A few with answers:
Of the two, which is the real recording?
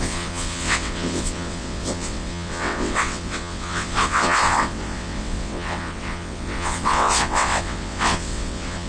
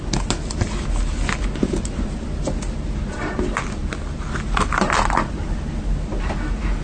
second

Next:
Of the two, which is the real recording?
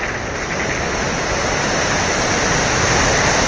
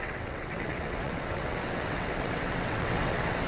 first